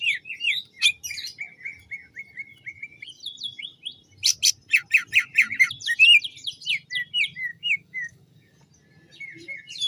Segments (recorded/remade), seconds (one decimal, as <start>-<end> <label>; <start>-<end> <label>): 0.0-7.5 recorded; 7.5-8.6 remade; 8.6-9.9 recorded